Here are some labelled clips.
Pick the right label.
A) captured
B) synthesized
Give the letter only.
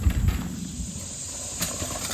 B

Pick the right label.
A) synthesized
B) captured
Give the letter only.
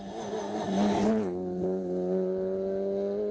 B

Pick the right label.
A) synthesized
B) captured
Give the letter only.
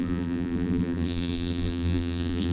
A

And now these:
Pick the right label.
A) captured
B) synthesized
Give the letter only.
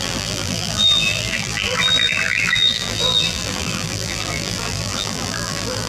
B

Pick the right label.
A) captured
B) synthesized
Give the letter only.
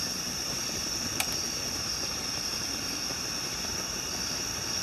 B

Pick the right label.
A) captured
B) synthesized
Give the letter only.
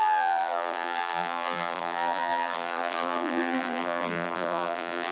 B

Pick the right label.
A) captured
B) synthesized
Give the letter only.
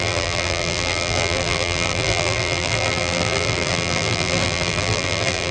B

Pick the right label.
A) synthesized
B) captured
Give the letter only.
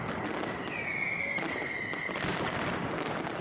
B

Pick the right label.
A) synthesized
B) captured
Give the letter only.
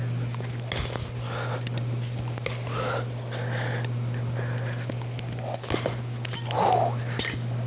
B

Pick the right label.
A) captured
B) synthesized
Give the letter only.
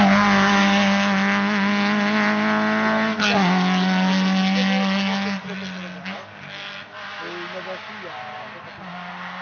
A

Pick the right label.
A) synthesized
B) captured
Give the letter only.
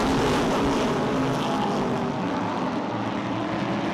B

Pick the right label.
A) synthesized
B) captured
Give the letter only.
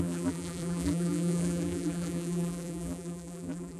A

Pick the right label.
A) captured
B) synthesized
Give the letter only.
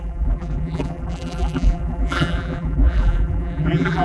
B